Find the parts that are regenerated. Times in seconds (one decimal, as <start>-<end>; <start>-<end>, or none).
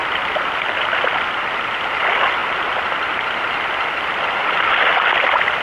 none